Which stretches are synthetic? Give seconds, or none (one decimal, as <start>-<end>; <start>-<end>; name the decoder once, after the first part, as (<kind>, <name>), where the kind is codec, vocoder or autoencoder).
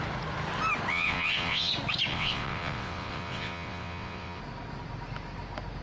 0.9-1.7 (vocoder, WaveNeXt); 2.1-4.4